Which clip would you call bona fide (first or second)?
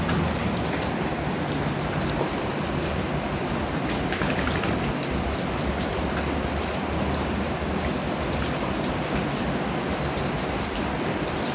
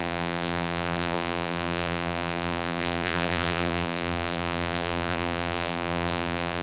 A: first